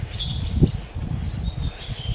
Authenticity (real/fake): real